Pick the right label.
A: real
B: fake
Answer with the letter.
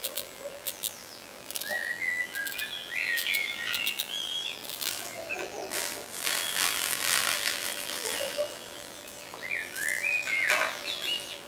B